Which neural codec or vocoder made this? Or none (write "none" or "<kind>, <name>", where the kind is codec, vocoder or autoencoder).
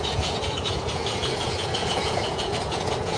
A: vocoder, Vocos